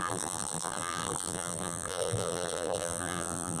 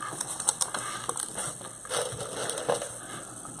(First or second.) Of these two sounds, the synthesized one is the first